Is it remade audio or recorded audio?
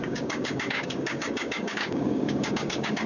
remade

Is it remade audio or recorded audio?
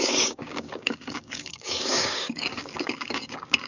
remade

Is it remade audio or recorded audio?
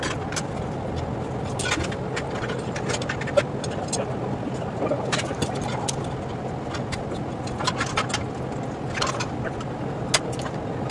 recorded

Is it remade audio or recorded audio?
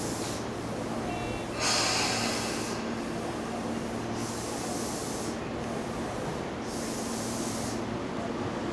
recorded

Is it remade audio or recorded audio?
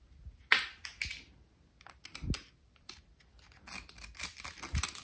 recorded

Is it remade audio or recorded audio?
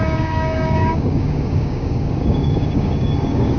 remade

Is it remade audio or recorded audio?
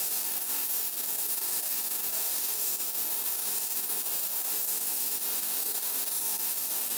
remade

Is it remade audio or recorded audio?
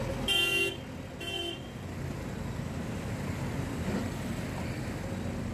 recorded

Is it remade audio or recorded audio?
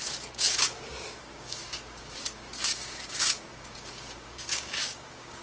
remade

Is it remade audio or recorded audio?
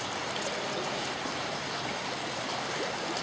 recorded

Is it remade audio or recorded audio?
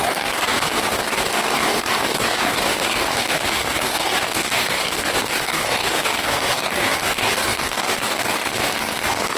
remade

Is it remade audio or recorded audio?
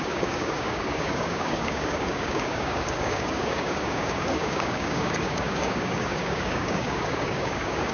remade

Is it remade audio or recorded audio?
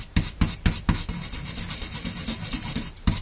recorded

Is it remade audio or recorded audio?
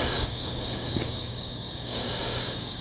remade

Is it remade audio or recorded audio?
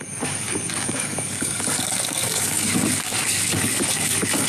remade